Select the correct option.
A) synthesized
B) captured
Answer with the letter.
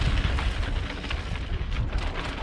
B